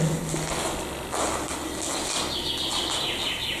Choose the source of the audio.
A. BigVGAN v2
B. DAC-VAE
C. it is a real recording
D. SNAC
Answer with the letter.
C